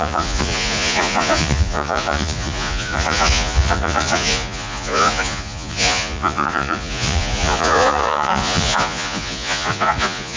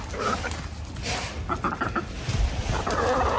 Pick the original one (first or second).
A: second